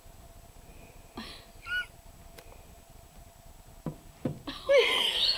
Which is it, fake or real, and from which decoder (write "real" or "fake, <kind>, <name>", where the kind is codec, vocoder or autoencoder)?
real